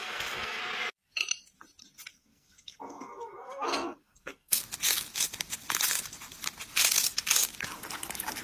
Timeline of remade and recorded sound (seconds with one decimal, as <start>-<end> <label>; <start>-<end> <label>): 0.0-0.6 remade; 0.6-2.1 recorded; 2.1-4.6 remade; 4.6-8.4 recorded